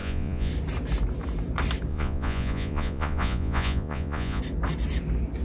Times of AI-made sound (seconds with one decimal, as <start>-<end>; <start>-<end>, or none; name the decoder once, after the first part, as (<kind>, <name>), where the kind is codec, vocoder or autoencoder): 0.0-0.5 (vocoder, Vocos); 1.9-4.4